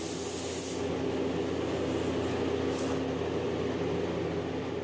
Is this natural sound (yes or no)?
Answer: yes